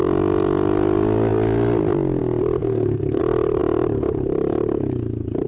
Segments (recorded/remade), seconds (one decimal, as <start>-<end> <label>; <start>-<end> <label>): 0.0-2.6 recorded; 2.6-3.2 remade; 3.2-5.5 recorded